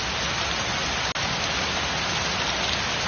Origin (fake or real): real